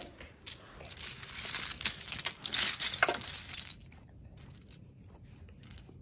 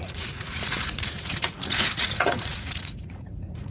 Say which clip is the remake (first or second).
second